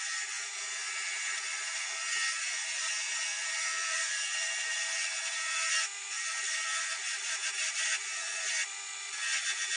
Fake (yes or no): yes